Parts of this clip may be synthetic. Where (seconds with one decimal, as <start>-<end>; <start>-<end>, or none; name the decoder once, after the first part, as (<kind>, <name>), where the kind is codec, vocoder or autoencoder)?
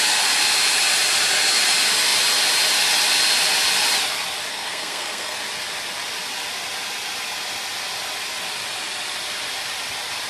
4.5-5.4 (codec, SNAC)